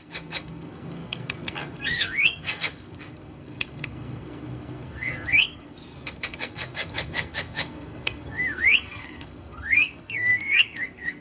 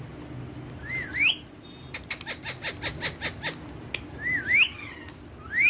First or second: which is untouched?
second